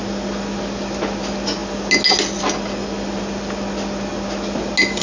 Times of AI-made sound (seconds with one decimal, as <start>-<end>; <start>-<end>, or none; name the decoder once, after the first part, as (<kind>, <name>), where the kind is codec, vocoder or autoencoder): none